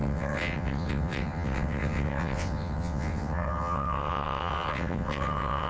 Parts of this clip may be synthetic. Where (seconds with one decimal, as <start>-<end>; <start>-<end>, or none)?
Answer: 0.0-5.7